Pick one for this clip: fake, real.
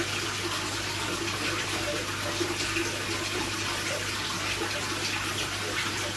real